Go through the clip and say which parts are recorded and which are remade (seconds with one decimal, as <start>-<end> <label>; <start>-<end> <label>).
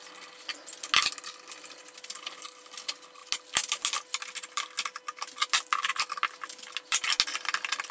0.0-7.9 recorded